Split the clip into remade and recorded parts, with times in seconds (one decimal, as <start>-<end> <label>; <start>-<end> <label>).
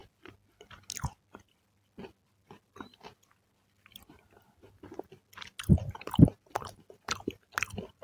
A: 0.0-8.0 recorded